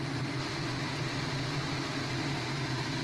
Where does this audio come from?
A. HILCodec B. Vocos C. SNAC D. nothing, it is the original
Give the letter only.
D